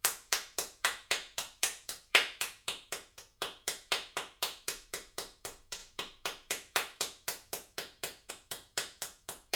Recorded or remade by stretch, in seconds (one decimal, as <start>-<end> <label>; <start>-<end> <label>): 0.0-9.6 remade